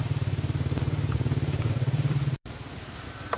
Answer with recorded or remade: remade